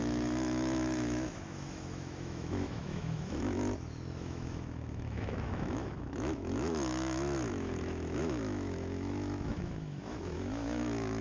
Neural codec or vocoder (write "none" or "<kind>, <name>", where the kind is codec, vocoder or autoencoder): autoencoder, DAC-VAE